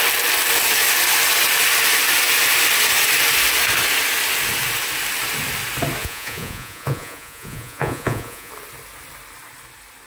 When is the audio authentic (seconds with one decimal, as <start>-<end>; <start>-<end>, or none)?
0.0-6.0; 8.5-10.1